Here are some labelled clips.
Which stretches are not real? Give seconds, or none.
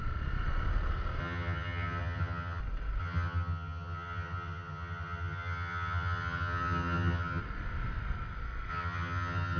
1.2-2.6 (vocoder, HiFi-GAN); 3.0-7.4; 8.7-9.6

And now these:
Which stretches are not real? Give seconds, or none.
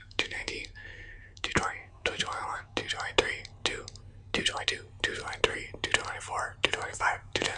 0.0-2.8 (autoencoder, DAC-VAE); 6.7-7.6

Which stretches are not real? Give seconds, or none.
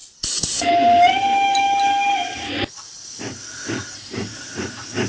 none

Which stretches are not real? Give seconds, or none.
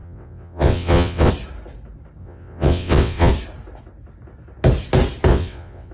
0.0-1.3 (vocoder, WaveNeXt); 2.2-3.3; 5.3-5.9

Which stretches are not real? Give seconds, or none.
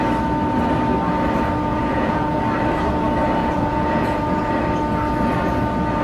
1.7-2.4 (vocoder, Vocos); 3.4-4.5